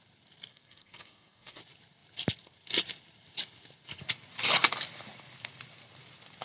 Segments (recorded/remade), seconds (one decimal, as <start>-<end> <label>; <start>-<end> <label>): 0.0-0.5 recorded; 0.5-1.6 remade; 1.6-6.4 recorded